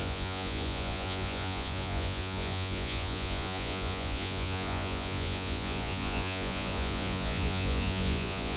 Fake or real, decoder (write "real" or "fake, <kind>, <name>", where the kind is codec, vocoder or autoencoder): fake, vocoder, Vocos